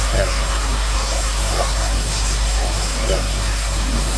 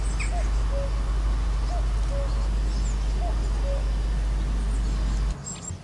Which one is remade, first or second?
first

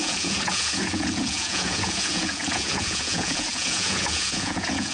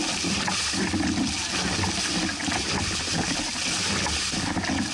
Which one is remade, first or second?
first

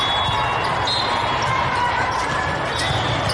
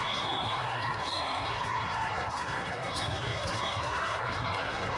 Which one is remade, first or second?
second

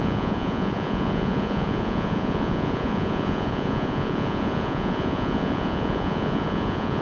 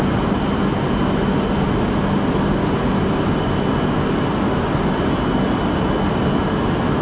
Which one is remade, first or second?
first